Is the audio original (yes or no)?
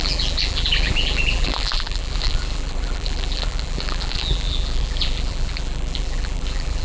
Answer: no